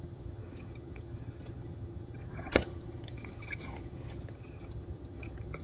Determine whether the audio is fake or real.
fake